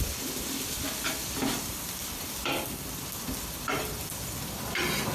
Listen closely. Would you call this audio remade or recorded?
remade